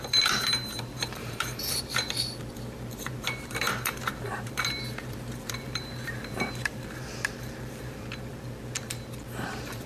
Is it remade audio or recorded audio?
remade